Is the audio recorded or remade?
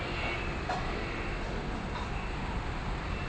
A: recorded